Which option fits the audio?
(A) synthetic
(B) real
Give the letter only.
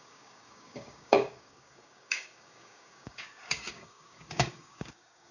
A